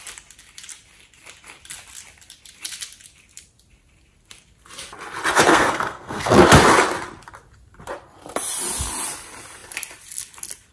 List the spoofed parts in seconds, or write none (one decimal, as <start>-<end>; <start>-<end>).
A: 5.5-6.3